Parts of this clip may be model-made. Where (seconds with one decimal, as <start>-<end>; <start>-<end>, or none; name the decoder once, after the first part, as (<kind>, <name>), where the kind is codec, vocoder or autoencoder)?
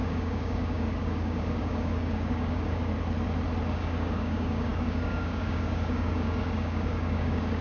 0.0-2.9 (codec, DAC); 3.7-7.6